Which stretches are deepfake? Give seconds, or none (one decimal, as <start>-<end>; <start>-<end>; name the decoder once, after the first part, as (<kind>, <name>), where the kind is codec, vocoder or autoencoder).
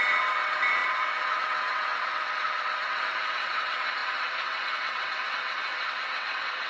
0.0-6.7 (vocoder, WaveNeXt)